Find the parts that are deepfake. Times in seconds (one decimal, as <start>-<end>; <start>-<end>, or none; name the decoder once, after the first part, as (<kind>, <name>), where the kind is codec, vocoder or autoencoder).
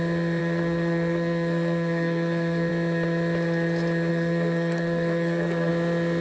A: 0.4-2.7 (codec, SNAC); 4.1-5.7